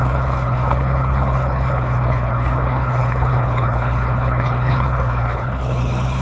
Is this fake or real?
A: fake